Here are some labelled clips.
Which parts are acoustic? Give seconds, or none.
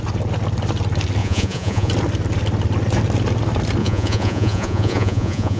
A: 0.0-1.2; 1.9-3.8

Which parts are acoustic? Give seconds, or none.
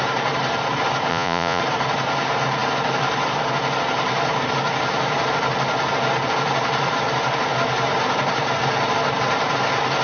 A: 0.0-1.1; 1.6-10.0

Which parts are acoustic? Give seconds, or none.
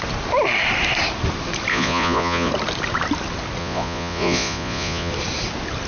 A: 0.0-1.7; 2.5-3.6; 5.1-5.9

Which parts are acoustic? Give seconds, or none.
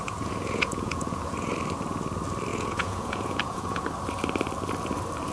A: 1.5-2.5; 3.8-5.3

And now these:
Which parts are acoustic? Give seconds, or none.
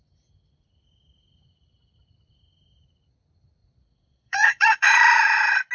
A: 0.0-3.6